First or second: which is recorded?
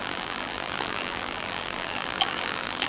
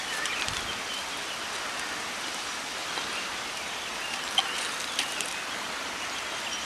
second